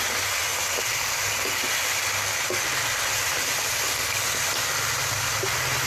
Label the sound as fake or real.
real